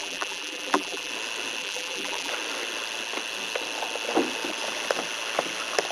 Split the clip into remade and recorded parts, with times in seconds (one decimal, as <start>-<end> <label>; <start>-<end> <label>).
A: 0.0-1.1 remade; 1.1-1.6 recorded; 1.6-2.3 remade; 2.3-5.9 recorded